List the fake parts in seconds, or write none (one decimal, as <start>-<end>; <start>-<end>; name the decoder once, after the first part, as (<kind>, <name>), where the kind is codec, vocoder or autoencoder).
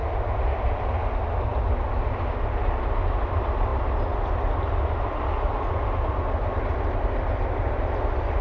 none